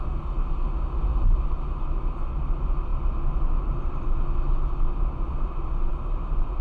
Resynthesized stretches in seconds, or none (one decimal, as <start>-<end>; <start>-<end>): none